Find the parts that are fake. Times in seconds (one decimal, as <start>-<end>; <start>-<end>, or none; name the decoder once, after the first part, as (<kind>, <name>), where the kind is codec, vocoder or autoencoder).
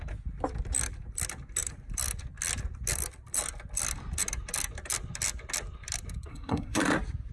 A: 6.3-6.8 (codec, SNAC)